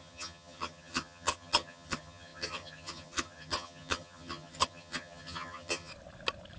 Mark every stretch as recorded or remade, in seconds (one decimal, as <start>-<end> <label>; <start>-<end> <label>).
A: 0.0-5.9 remade; 5.9-6.6 recorded

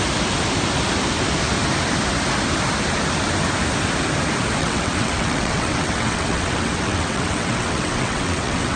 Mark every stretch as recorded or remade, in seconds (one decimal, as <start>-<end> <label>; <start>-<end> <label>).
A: 0.0-4.6 recorded; 4.6-8.8 remade

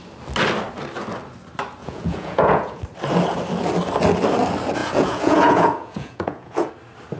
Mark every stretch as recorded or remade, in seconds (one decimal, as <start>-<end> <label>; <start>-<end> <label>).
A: 0.0-1.8 recorded; 1.8-2.8 remade; 2.8-4.8 recorded; 4.8-6.7 remade; 6.7-7.2 recorded

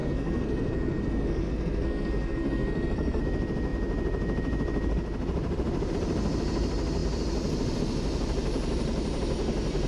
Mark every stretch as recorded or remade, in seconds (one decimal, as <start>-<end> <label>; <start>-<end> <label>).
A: 0.0-3.2 remade; 3.2-9.9 recorded

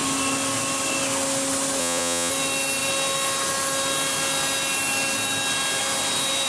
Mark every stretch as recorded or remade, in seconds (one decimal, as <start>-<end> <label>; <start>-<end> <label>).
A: 0.0-1.8 recorded; 1.8-2.3 remade; 2.3-6.5 recorded

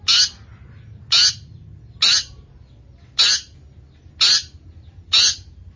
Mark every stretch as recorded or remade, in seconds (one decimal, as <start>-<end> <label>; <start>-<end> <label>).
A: 0.0-5.8 recorded

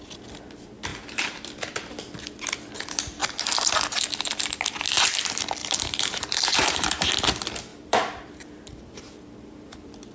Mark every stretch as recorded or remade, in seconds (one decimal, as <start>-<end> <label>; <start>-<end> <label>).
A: 0.0-0.9 recorded; 0.9-1.7 remade; 1.7-5.6 recorded; 5.6-7.1 remade; 7.1-7.7 recorded; 7.7-10.1 remade